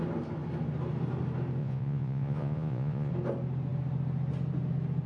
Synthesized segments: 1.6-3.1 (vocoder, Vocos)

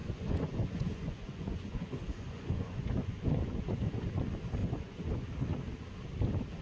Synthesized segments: 0.0-4.0 (vocoder, Vocos); 4.6-5.3

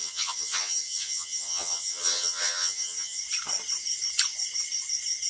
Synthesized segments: 0.0-3.2 (vocoder, HiFi-GAN)

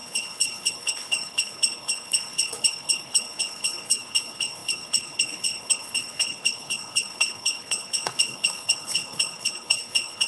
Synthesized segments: 0.0-10.3 (codec, HILCodec)

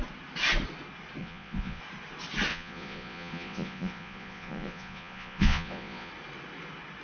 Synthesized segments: 1.2-1.8 (vocoder, Vocos); 2.5-6.1

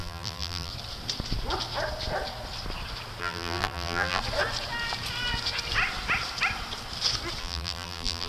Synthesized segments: 0.0-0.7 (vocoder, BigVGAN v2); 3.2-4.2; 7.4-8.3

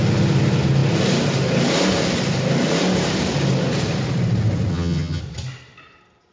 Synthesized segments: 4.7-5.2 (vocoder, HiFi-GAN)